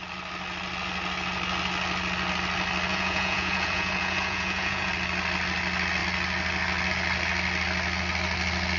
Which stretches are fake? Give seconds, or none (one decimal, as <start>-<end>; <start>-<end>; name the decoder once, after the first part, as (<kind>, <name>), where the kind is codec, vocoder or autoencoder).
2.9-4.9 (vocoder, Vocos)